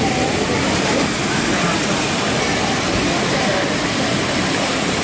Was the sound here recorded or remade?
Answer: recorded